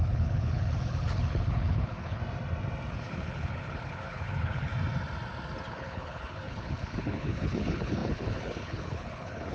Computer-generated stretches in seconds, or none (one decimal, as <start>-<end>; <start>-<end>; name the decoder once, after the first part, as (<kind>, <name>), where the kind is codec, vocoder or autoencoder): 0.0-2.2 (codec, HILCodec); 2.9-4.7; 5.7-9.5